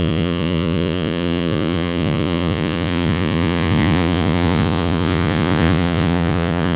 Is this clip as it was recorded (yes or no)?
no